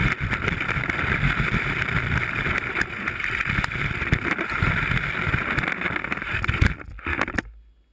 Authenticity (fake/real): real